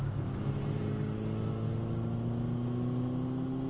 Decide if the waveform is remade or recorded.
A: recorded